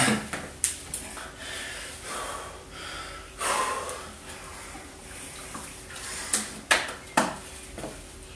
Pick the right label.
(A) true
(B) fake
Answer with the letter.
A